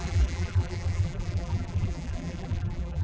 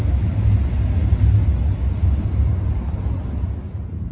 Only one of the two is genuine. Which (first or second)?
second